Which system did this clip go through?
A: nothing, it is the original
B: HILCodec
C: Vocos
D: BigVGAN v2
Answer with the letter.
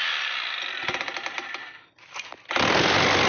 A